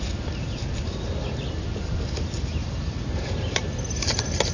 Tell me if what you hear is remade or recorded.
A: recorded